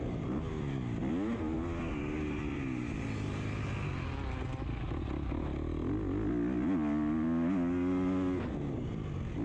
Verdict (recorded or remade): recorded